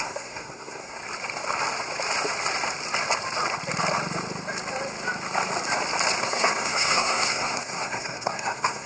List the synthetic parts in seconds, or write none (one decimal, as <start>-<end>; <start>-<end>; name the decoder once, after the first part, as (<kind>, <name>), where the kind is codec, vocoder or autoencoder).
0.0-1.0 (codec, SNAC); 6.2-8.9